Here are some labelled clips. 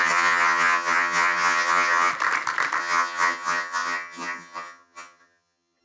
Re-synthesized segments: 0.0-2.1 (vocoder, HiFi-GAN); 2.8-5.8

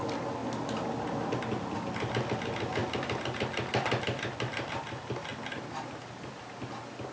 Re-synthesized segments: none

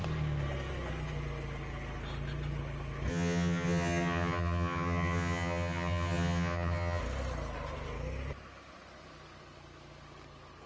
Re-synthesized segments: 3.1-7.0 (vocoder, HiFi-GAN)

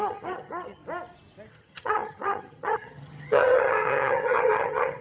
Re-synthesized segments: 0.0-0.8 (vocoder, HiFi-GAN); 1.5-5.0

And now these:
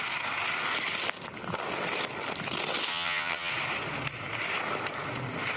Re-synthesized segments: 2.9-3.5 (vocoder, HiFi-GAN)

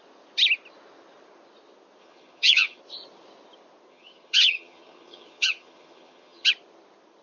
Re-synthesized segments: 2.0-2.8 (vocoder, HiFi-GAN); 3.9-6.5